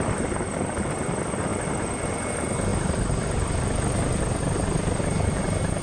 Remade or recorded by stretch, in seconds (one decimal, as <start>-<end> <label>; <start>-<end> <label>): 0.0-5.8 recorded